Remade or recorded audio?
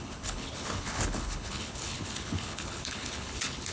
remade